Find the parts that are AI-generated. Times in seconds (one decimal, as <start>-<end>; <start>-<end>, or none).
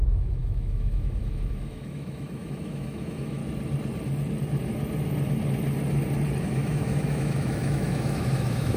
0.0-3.4; 6.4-8.8